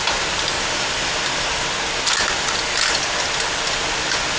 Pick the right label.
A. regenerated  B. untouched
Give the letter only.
B